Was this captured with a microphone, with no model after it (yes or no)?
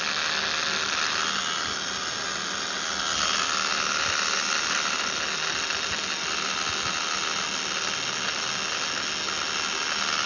yes